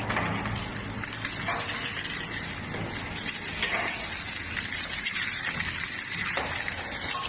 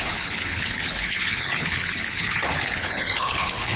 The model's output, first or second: second